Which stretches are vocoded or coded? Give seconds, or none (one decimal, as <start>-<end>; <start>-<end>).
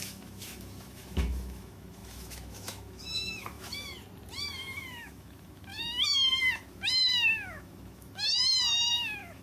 0.0-3.9; 4.4-9.4